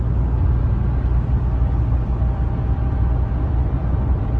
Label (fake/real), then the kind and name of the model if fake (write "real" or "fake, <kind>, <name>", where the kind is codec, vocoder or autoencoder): real